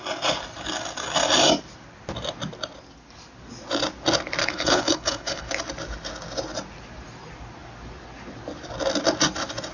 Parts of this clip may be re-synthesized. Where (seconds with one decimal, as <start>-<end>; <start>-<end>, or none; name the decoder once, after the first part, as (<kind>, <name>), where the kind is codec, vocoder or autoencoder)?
4.4-5.5 (codec, HILCodec)